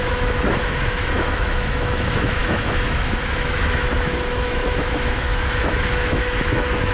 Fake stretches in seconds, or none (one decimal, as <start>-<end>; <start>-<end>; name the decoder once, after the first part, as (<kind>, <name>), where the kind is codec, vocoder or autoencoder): 0.0-6.9 (autoencoder, DAC-VAE)